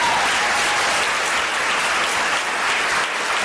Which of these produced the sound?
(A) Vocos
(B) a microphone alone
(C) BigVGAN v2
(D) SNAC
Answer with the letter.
B